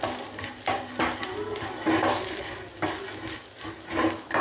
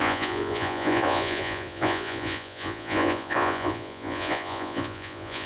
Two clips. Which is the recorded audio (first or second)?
first